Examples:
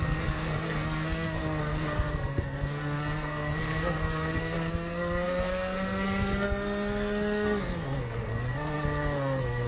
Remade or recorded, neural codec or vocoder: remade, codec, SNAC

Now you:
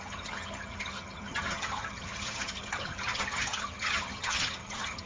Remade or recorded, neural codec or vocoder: remade, vocoder, HiFi-GAN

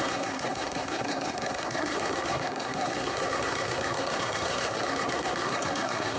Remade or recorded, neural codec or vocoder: remade, codec, SNAC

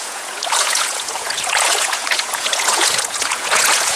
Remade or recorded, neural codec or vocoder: remade, vocoder, Vocos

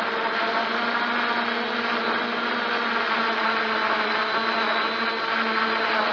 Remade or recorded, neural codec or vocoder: recorded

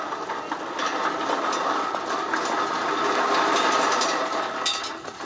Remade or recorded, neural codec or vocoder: recorded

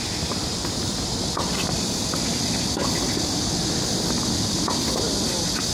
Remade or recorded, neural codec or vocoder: recorded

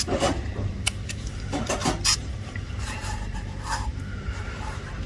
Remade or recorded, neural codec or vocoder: remade, vocoder, BigVGAN v2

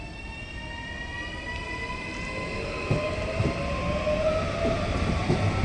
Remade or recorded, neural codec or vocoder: recorded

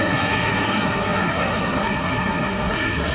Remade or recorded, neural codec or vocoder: remade, codec, SNAC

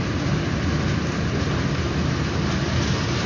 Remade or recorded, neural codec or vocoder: recorded